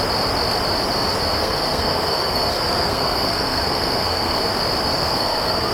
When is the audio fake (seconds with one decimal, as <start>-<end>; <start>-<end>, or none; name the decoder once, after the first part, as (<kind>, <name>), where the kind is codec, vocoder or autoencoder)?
1.4-4.4 (codec, SNAC); 4.9-5.7

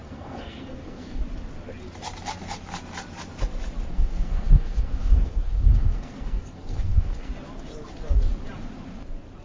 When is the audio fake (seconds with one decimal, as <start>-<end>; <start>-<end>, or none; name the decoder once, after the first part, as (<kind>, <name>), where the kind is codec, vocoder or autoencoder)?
0.0-1.2 (codec, SNAC); 3.9-7.3

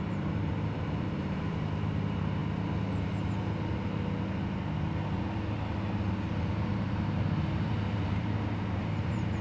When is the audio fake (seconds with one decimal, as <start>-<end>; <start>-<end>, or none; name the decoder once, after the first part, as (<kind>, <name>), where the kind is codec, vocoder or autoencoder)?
0.0-2.4 (vocoder, BigVGAN v2); 6.7-9.4

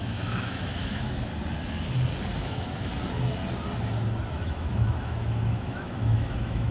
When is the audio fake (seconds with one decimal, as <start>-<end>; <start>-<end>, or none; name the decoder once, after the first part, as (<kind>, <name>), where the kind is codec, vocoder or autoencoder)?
0.0-1.3 (autoencoder, DAC-VAE); 2.4-2.9; 4.3-6.7

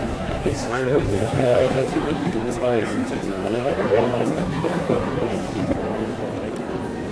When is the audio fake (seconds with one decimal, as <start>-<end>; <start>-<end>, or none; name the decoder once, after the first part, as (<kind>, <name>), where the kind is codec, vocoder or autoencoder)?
0.0-6.2 (codec, SNAC)

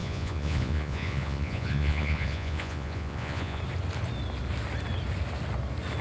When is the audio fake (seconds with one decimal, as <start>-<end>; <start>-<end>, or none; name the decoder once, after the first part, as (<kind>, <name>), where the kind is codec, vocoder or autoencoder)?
0.0-3.6 (vocoder, Vocos)

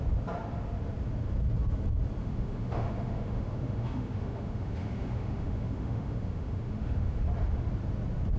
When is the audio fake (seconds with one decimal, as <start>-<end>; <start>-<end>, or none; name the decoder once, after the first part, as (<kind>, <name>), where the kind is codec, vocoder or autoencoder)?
2.2-7.2 (autoencoder, DAC-VAE)

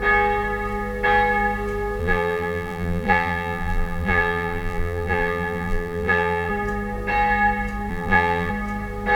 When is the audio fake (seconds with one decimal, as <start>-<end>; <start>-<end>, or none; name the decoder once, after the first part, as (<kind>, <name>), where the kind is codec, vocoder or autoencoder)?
2.0-6.5 (vocoder, BigVGAN v2); 7.9-8.5